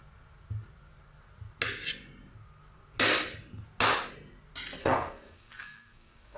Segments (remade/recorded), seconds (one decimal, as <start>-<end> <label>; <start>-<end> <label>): 0.0-4.8 recorded; 4.8-6.4 remade